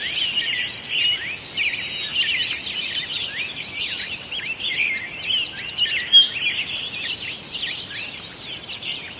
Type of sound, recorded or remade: recorded